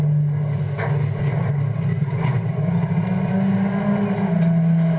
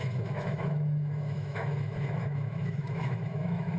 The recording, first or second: first